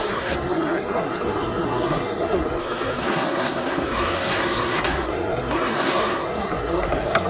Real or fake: fake